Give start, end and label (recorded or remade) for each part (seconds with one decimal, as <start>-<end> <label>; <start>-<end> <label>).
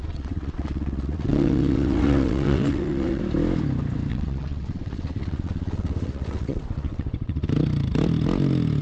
0.0-3.2 remade; 3.2-4.1 recorded; 4.1-7.5 remade; 7.5-8.8 recorded